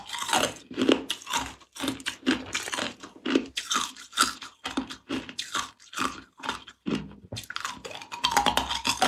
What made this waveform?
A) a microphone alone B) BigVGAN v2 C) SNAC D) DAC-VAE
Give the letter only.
A